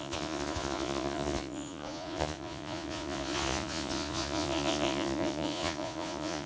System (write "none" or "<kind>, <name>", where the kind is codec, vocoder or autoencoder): vocoder, Vocos